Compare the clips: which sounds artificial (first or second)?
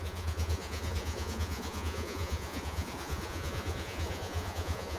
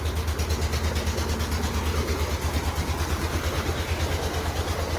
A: first